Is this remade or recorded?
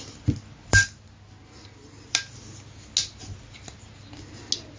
recorded